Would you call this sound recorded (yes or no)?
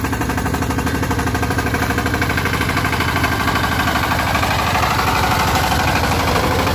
no